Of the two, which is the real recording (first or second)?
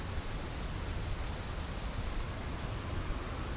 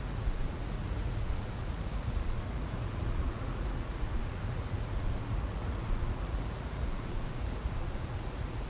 first